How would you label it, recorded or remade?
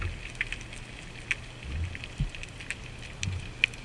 recorded